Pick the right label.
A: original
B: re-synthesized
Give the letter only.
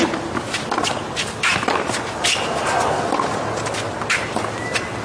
A